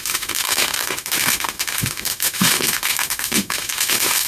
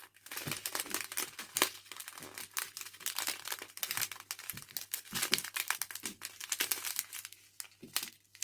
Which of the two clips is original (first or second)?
second